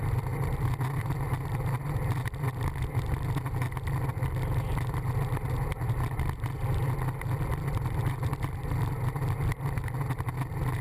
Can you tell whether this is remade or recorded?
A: recorded